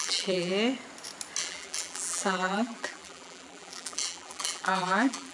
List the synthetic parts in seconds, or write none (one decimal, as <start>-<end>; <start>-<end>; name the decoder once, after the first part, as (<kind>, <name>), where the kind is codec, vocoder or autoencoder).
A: 0.0-0.5 (vocoder, BigVGAN v2); 1.4-5.3